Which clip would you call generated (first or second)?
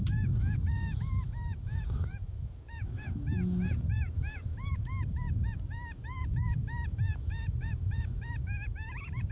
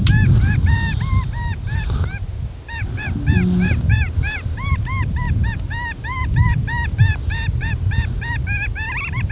first